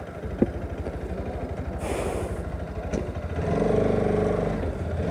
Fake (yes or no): no